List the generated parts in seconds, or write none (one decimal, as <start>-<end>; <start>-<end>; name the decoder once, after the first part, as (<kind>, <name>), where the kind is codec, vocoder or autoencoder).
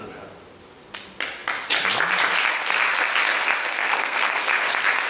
3.6-4.3 (codec, SNAC)